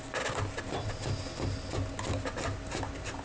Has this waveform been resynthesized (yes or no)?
no